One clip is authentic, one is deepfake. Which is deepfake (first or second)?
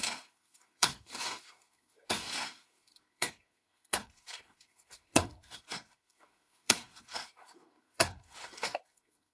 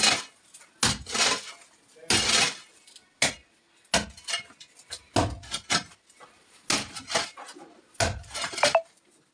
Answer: first